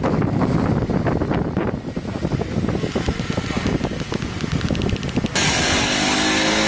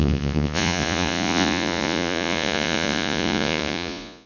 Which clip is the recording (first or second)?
first